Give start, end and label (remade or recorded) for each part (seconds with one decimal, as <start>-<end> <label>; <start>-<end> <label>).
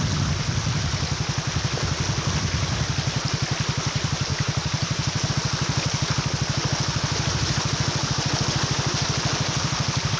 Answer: 0.0-4.3 recorded; 4.3-5.3 remade; 5.3-10.2 recorded